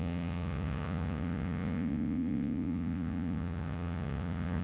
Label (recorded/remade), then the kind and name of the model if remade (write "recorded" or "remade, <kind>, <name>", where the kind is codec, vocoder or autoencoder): remade, vocoder, Vocos